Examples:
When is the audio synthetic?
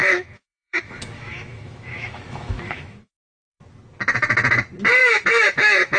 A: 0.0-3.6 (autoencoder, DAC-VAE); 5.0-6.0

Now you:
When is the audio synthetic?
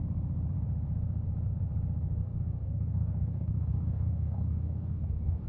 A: 2.2-5.5 (codec, DAC)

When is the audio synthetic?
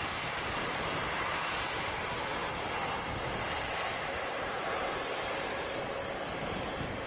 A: none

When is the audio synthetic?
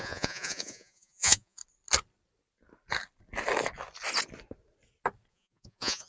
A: 0.0-1.6 (vocoder, Vocos); 5.3-6.1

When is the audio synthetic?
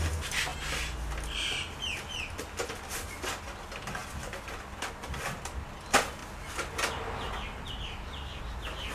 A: none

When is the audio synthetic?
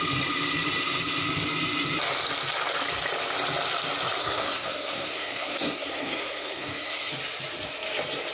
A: 4.2-7.1 (codec, SNAC)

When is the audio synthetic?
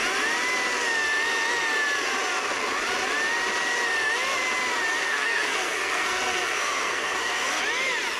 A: 5.0-7.6 (codec, SNAC)